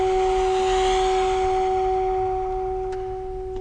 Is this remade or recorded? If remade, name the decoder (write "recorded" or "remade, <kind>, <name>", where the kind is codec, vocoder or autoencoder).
recorded